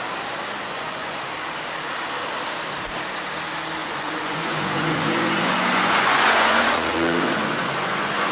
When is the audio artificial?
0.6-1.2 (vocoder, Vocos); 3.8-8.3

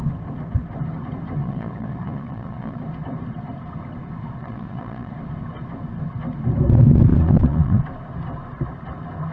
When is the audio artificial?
1.4-2.8 (vocoder, Vocos); 4.4-5.1; 7.1-7.8